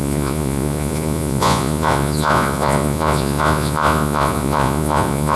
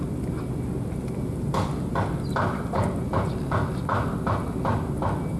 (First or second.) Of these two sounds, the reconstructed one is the first